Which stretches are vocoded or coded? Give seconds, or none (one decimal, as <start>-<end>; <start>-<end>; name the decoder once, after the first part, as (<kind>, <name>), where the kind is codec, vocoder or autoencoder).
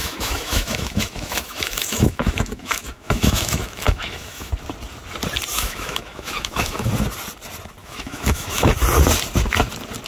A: 0.0-4.5 (autoencoder, DAC-VAE); 5.5-6.9; 7.8-8.7